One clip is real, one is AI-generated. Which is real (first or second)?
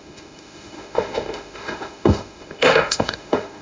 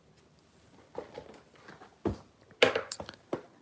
second